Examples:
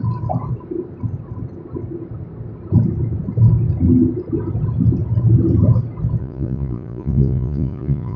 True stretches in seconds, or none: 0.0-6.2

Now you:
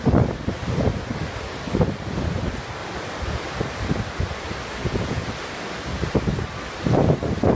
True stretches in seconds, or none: 0.0-4.8; 5.3-7.5

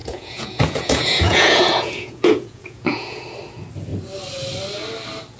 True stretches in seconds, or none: 3.2-5.4